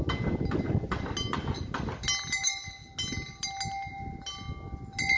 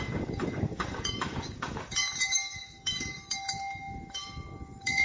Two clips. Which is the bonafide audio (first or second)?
first